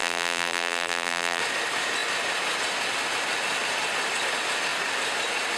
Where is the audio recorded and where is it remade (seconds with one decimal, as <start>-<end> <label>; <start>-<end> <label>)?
0.0-1.4 remade; 1.4-5.6 recorded